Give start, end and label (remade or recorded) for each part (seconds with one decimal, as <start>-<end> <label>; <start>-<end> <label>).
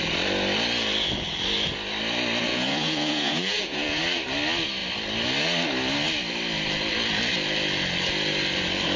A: 0.0-2.4 recorded; 2.4-4.0 remade; 4.0-9.0 recorded